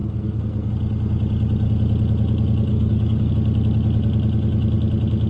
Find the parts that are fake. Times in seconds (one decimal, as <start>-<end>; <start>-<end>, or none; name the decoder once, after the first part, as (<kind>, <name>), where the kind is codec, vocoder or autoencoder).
0.0-0.7 (codec, SNAC); 2.7-3.3